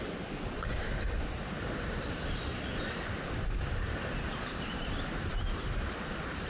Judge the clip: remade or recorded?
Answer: remade